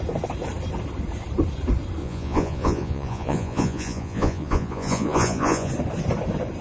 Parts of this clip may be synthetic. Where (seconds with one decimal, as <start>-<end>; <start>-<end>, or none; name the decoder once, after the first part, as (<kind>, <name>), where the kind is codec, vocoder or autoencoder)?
2.0-5.7 (vocoder, Vocos)